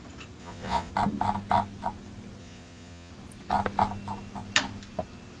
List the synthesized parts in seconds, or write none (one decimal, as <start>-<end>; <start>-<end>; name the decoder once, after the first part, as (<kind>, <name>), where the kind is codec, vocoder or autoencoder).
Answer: 0.4-0.9 (vocoder, Vocos); 2.4-3.1

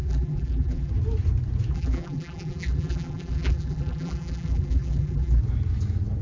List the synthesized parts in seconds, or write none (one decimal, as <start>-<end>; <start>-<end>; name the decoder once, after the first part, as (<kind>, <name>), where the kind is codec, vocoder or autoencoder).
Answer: 0.0-0.9 (vocoder, BigVGAN v2); 1.7-5.4

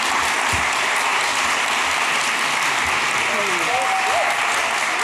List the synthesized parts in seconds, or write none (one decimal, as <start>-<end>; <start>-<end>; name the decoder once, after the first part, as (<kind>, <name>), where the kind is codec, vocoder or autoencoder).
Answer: none

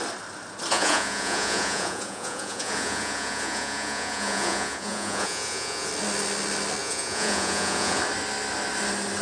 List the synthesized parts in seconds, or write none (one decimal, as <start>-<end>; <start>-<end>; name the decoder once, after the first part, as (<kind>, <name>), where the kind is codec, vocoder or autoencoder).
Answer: 0.7-5.9 (vocoder, Vocos); 6.8-8.0

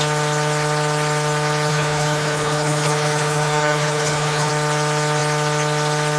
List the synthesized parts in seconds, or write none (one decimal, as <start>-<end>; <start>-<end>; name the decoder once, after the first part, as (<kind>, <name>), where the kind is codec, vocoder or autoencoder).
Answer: 1.7-4.5 (codec, HILCodec)

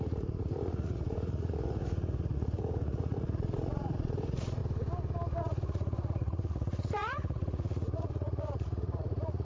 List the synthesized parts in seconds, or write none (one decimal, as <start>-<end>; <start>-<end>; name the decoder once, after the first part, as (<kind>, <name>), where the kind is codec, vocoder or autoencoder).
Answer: 0.0-4.6 (vocoder, Vocos); 5.4-9.4

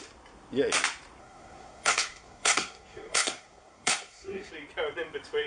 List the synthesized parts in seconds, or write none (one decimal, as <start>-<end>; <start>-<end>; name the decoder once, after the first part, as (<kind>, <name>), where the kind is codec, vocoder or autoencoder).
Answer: 1.2-4.5 (codec, SNAC)

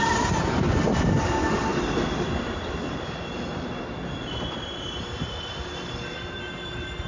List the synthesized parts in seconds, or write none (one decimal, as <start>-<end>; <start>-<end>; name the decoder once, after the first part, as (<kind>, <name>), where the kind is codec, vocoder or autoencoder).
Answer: none